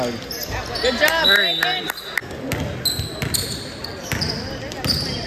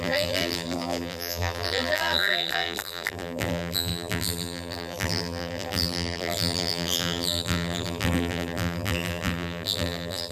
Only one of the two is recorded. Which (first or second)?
first